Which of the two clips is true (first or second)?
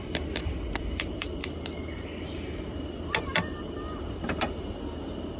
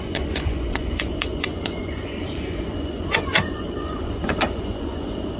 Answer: first